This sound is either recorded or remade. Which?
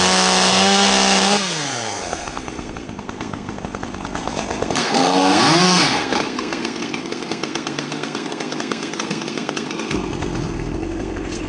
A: remade